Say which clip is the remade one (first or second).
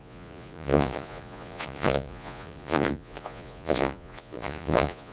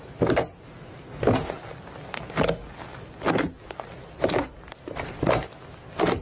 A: first